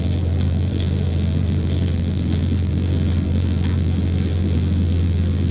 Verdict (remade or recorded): remade